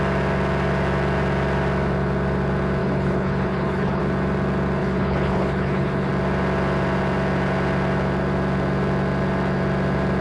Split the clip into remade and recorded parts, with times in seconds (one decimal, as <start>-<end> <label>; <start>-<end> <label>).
0.0-2.8 recorded; 2.8-4.0 remade; 4.0-4.8 recorded; 4.8-6.1 remade; 6.1-10.2 recorded